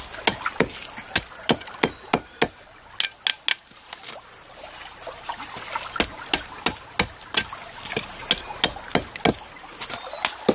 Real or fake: real